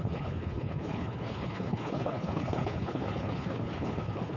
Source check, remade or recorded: remade